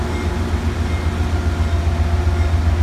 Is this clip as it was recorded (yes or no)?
yes